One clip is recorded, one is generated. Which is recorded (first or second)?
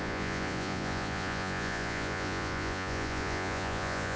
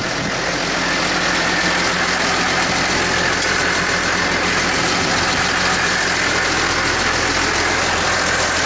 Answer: second